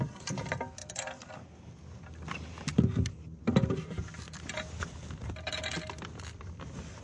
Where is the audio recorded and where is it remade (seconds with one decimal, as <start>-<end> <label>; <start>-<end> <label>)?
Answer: 0.0-7.0 recorded

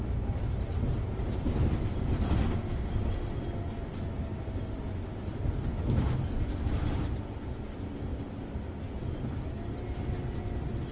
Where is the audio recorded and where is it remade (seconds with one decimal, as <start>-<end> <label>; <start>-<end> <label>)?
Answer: 0.0-10.9 recorded

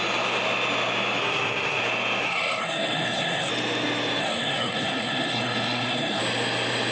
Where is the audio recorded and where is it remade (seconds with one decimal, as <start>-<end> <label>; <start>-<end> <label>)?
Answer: 0.0-1.2 recorded; 1.2-1.8 remade; 1.8-2.2 recorded; 2.2-3.5 remade; 3.5-4.2 recorded; 4.2-6.2 remade; 6.2-6.9 recorded

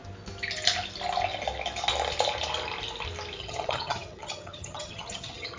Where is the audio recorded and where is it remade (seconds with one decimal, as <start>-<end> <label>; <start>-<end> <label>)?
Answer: 0.0-3.4 recorded; 3.4-5.6 remade

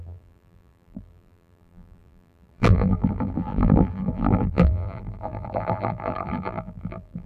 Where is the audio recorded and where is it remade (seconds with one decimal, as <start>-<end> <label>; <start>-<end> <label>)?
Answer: 0.0-7.3 remade

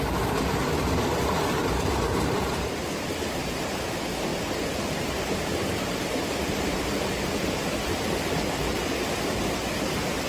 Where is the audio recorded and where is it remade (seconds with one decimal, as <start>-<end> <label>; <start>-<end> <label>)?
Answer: 0.0-1.6 recorded; 1.6-3.6 remade; 3.6-4.3 recorded; 4.3-7.8 remade; 7.8-10.3 recorded

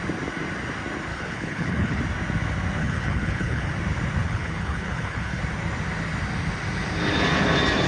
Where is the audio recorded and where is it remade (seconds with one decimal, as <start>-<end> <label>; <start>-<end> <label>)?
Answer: 0.0-1.1 recorded; 1.1-2.0 remade; 2.0-2.8 recorded; 2.8-3.7 remade; 3.7-4.2 recorded; 4.2-5.4 remade; 5.4-7.9 recorded